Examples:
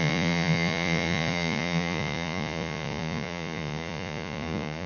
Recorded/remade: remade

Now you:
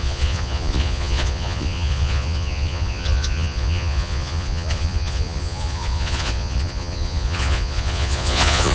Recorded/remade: remade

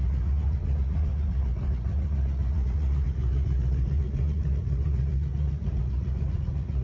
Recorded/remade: remade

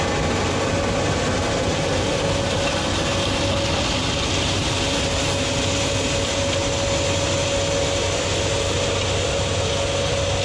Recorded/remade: recorded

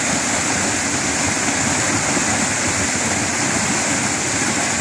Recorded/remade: recorded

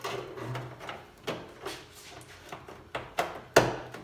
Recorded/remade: recorded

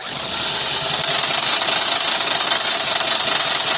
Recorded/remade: recorded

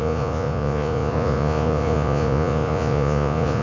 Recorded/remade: remade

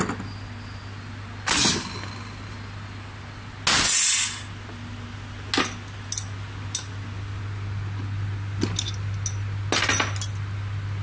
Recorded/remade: recorded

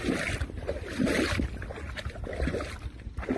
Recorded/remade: recorded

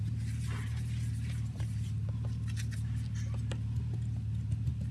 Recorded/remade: recorded